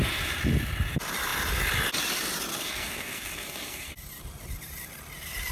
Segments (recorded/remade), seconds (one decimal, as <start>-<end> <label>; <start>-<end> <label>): 0.0-2.5 recorded; 2.5-3.9 remade; 3.9-5.5 recorded